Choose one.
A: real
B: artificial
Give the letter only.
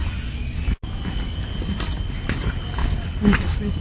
A